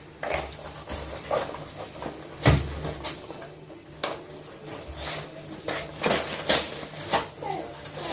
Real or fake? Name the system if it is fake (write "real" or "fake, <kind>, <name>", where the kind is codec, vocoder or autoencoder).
real